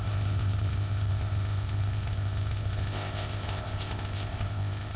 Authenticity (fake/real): fake